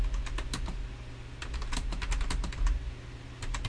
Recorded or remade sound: recorded